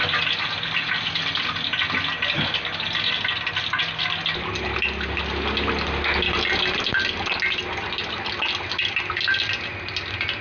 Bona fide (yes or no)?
yes